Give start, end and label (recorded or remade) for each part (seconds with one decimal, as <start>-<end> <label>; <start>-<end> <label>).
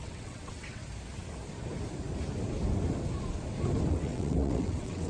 0.0-0.8 remade; 0.8-3.9 recorded; 3.9-5.1 remade